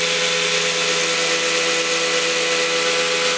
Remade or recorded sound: recorded